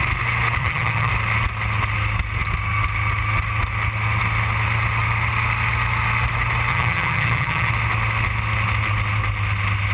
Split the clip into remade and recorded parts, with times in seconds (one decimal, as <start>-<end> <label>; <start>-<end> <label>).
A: 0.0-0.6 recorded; 0.6-1.1 remade; 1.1-6.7 recorded; 6.7-7.7 remade; 7.7-9.9 recorded

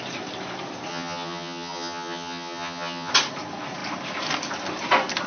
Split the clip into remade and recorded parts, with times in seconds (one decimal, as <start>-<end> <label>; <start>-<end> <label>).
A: 0.0-0.9 recorded; 0.9-3.1 remade; 3.1-5.3 recorded

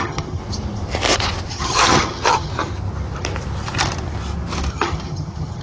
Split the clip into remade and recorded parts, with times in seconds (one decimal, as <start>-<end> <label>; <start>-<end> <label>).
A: 0.0-0.4 remade; 0.4-1.5 recorded; 1.5-2.5 remade; 2.5-4.7 recorded; 4.7-5.6 remade

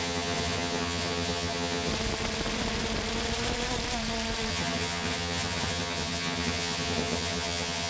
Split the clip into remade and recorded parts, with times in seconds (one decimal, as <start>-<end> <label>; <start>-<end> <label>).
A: 0.0-1.9 remade; 1.9-4.5 recorded; 4.5-7.9 remade

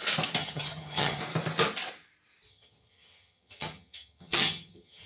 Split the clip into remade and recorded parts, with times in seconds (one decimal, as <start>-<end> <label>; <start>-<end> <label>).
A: 0.0-0.4 recorded; 0.4-1.2 remade; 1.2-2.5 recorded; 2.5-5.1 remade

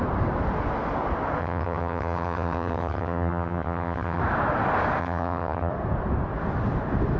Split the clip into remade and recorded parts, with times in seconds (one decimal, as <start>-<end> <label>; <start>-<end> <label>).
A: 0.0-1.4 recorded; 1.4-4.2 remade; 4.2-5.0 recorded; 5.0-5.7 remade; 5.7-7.2 recorded